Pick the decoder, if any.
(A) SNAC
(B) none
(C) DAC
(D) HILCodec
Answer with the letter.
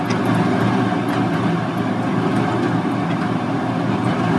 B